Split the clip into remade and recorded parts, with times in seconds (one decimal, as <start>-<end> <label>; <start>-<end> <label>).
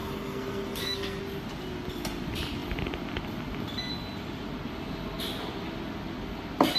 0.0-1.2 remade; 1.2-6.8 recorded